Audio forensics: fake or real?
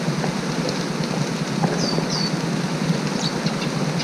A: real